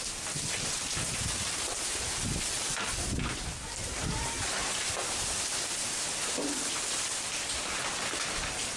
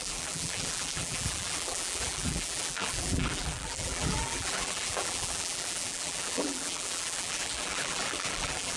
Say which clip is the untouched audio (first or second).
first